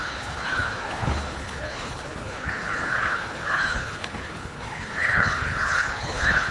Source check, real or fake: fake